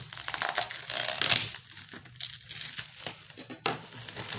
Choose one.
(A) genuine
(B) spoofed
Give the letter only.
A